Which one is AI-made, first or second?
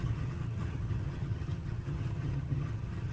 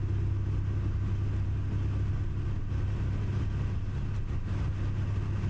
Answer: first